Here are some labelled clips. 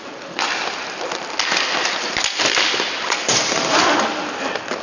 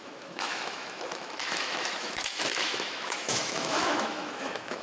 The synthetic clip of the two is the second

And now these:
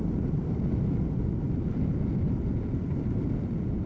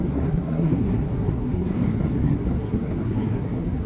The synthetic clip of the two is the second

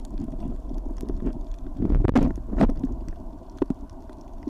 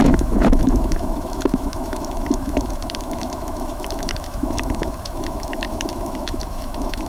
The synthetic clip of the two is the second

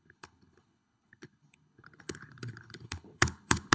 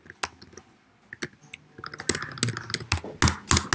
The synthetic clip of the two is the first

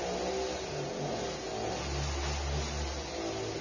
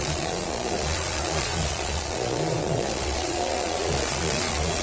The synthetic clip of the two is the second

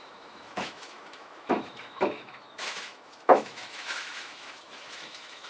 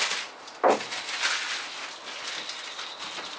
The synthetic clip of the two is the first